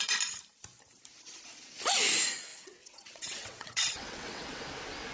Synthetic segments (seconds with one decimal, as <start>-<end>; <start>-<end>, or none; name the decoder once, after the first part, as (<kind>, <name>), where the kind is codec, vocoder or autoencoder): 2.5-4.6 (vocoder, WaveNeXt)